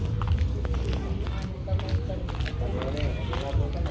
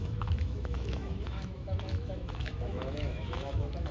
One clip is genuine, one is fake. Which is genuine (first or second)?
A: first